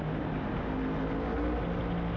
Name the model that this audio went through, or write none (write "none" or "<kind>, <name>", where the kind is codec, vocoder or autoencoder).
none